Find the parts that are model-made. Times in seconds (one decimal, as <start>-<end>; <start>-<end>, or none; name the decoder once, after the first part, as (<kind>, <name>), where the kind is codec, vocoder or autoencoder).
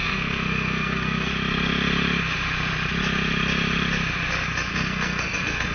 0.0-1.3 (codec, SNAC); 4.7-5.7